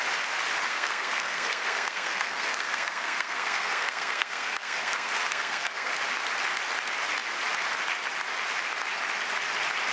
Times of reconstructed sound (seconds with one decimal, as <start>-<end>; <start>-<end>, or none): 0.7-5.9

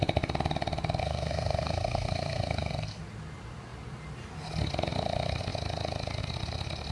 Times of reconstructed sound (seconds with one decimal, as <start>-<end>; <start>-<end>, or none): 1.0-3.0